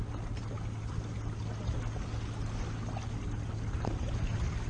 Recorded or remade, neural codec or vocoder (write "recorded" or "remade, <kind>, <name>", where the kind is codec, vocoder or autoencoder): recorded